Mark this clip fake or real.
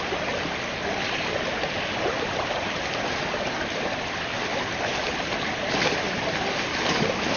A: real